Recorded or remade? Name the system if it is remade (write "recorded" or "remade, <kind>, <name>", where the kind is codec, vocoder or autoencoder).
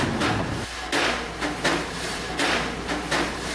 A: recorded